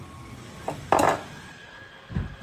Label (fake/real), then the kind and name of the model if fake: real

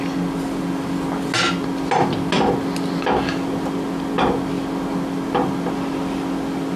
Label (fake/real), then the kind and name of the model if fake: real